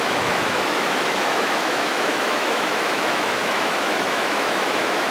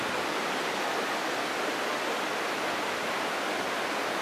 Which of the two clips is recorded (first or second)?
second